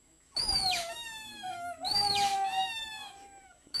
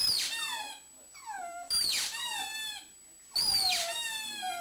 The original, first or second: second